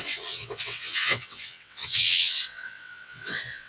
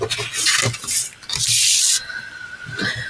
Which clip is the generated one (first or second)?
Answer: first